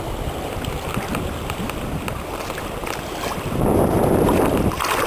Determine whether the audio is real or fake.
real